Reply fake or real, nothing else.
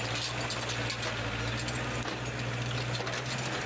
real